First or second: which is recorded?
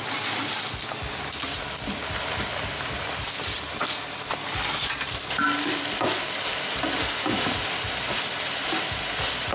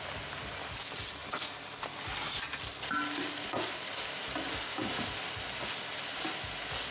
second